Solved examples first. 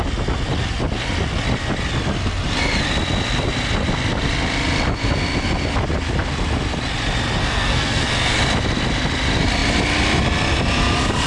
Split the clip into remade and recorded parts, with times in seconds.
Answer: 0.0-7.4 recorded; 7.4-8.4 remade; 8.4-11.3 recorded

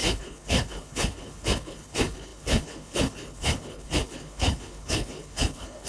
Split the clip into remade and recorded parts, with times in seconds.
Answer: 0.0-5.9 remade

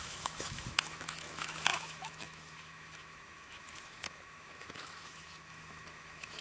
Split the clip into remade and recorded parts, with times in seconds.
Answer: 0.0-6.4 remade

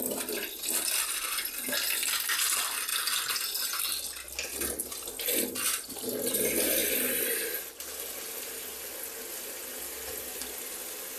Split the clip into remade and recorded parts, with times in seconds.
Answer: 0.0-2.9 remade; 2.9-5.5 recorded; 5.5-6.8 remade; 6.8-9.3 recorded; 9.3-11.2 remade